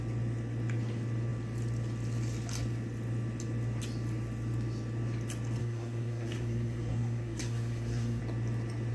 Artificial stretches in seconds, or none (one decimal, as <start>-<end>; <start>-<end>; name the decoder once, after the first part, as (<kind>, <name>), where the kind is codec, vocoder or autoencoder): 5.6-8.2 (codec, SNAC)